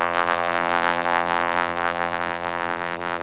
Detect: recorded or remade remade